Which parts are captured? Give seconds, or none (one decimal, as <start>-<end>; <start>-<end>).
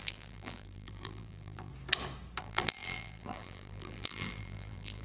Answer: 1.7-2.4